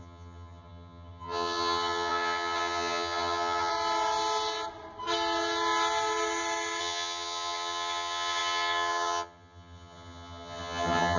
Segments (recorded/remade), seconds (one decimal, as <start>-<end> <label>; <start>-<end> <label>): 0.0-3.7 remade; 3.7-6.8 recorded; 6.8-11.2 remade